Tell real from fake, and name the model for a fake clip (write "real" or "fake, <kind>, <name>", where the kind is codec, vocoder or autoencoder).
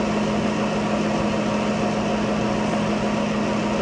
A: real